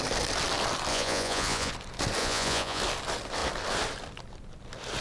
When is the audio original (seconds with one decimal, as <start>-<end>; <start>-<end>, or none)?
0.0-0.9; 1.7-2.2; 2.8-5.0